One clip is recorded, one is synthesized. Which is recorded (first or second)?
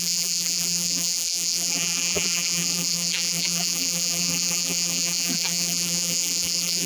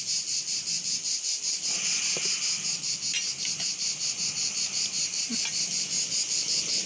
second